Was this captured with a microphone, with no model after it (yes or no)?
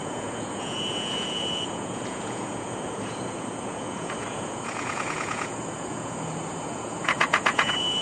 no